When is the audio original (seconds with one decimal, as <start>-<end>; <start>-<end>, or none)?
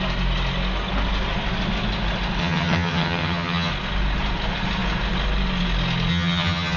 0.0-2.4; 3.7-6.1